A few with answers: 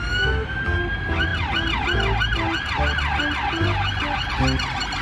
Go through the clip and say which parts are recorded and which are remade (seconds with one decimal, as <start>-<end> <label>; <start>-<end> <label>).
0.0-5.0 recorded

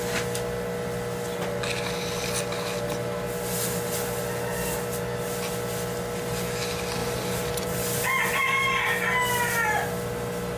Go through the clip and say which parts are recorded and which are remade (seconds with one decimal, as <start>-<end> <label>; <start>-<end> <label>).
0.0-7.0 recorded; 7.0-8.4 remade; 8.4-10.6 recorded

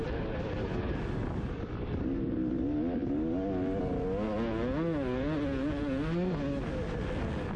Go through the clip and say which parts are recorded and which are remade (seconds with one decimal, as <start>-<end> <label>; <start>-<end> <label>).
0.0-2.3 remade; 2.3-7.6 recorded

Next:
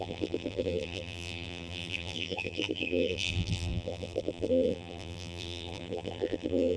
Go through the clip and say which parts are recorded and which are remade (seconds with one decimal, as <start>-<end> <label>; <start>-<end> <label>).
0.0-6.8 remade

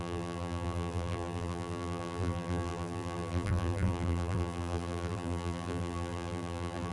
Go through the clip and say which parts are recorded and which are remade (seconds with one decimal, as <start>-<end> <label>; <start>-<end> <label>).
0.0-6.9 remade

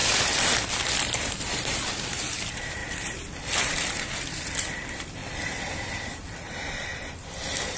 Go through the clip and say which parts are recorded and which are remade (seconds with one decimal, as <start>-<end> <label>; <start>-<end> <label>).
0.0-2.8 recorded; 2.8-4.1 remade; 4.1-5.2 recorded; 5.2-6.0 remade; 6.0-6.9 recorded; 6.9-7.8 remade